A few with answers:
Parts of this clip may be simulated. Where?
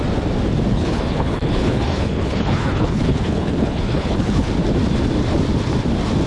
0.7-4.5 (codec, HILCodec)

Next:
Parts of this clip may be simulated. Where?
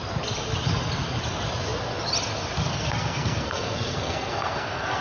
2.7-5.0 (codec, SNAC)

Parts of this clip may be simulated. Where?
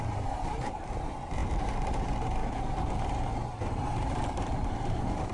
0.0-2.4 (vocoder, BigVGAN v2); 3.7-5.3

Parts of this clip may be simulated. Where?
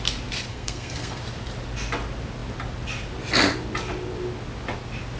0.5-1.2 (codec, SNAC)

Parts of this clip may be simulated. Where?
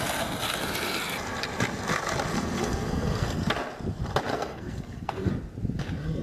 2.3-3.5 (codec, SNAC); 4.3-5.3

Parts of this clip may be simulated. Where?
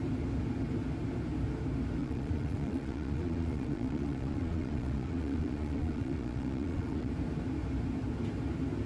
2.0-7.1 (vocoder, Vocos)